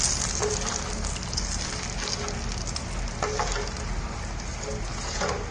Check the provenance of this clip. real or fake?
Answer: real